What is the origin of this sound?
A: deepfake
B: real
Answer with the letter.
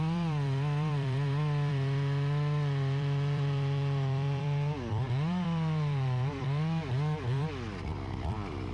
A